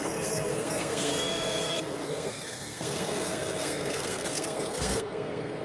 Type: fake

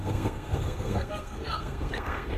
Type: fake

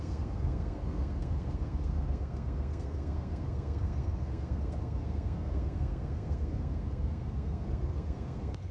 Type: fake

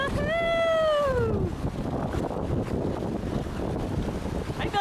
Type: real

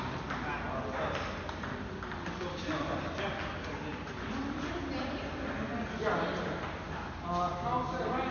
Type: real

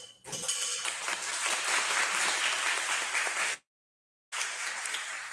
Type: real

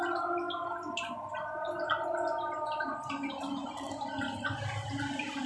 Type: real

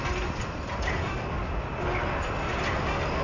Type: real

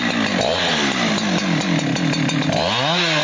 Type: real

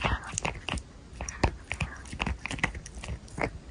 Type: real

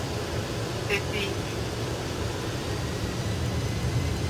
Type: real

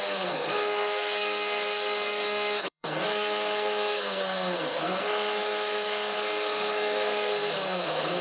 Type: fake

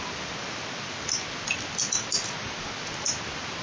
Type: real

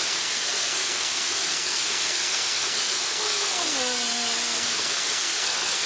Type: fake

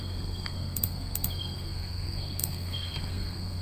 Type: fake